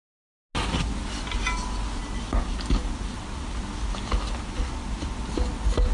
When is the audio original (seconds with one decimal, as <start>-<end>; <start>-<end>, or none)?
0.0-5.9